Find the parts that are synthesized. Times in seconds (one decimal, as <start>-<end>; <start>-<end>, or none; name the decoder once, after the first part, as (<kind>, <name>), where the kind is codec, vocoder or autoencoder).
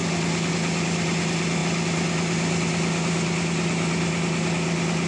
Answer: none